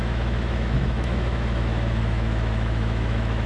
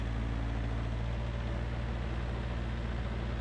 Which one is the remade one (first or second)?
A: first